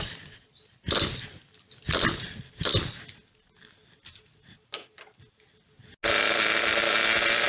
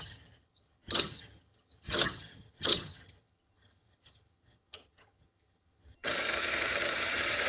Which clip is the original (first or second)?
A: first